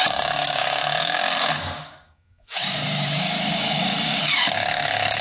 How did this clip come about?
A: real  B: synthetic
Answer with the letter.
B